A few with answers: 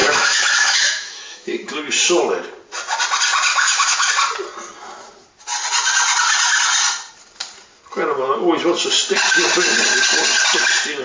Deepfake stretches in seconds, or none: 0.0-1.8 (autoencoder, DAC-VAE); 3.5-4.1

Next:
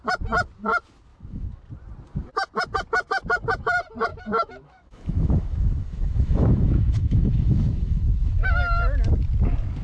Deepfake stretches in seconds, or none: 1.1-1.6 (autoencoder, DAC-VAE); 4.1-8.6